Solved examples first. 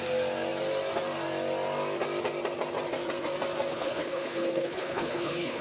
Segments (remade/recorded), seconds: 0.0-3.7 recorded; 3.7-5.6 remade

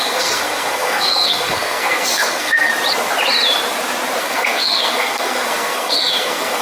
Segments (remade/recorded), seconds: 0.0-2.7 remade; 2.7-4.2 recorded; 4.2-6.6 remade

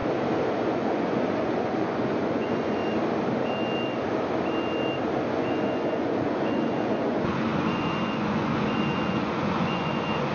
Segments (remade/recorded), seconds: 0.0-0.5 recorded; 0.5-2.8 remade; 2.8-5.3 recorded; 5.3-10.3 remade

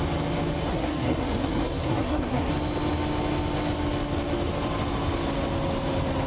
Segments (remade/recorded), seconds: 0.0-0.6 recorded; 0.6-2.5 remade; 2.5-6.3 recorded

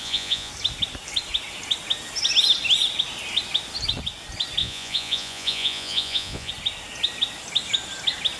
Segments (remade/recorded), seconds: 0.0-0.5 remade; 0.5-4.6 recorded; 4.6-6.5 remade; 6.5-8.4 recorded